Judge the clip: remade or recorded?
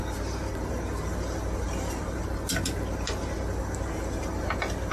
recorded